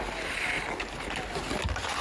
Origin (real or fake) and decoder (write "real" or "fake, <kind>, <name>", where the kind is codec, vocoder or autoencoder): real